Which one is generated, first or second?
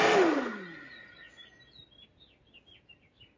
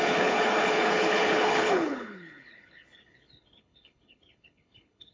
second